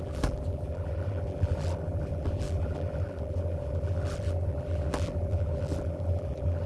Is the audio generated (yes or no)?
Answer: yes